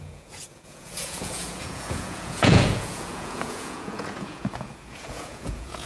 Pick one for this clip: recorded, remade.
remade